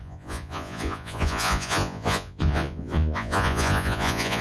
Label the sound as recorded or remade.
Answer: remade